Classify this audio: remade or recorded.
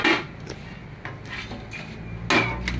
recorded